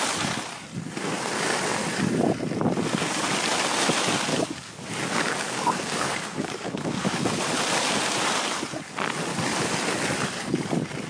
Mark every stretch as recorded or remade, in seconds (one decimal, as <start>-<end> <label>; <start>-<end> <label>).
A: 0.0-4.3 recorded; 4.3-7.4 remade; 7.4-11.1 recorded